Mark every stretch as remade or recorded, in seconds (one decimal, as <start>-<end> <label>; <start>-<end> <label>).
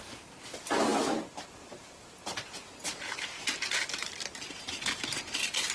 0.0-5.7 recorded